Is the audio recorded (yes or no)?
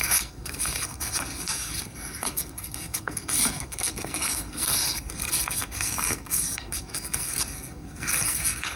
no